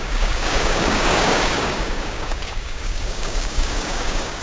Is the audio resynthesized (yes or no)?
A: yes